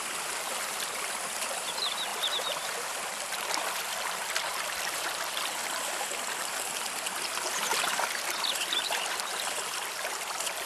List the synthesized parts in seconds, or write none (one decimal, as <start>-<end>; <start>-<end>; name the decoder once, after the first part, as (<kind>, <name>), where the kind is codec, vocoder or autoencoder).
0.0-10.7 (vocoder, BigVGAN v2)

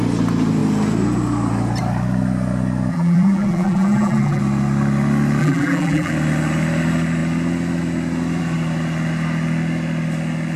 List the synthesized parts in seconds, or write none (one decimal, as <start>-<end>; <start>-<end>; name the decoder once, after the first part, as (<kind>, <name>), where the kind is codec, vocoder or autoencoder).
2.9-4.4 (vocoder, BigVGAN v2); 5.4-6.1

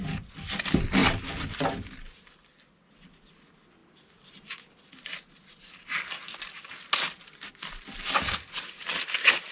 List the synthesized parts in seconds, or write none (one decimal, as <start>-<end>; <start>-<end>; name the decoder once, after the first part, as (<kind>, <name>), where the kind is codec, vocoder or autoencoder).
none

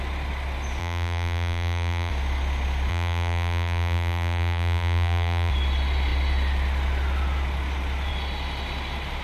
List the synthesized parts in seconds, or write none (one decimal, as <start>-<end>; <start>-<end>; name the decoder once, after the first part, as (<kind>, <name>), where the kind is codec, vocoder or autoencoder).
0.8-2.1 (vocoder, BigVGAN v2); 2.9-5.5

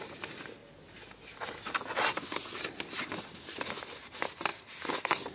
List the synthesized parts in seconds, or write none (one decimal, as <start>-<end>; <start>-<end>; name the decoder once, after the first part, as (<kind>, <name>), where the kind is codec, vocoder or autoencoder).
none

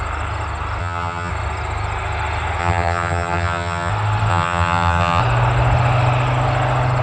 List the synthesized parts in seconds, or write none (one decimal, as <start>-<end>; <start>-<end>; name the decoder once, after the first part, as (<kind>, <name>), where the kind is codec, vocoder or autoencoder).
0.8-1.3 (vocoder, HiFi-GAN); 2.6-3.9; 4.3-5.2